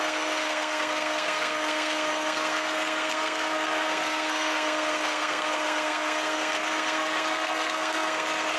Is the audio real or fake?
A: fake